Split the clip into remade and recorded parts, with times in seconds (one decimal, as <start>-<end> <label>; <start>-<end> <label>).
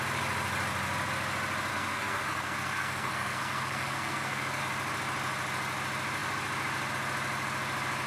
0.0-1.7 recorded; 1.7-4.6 remade; 4.6-8.1 recorded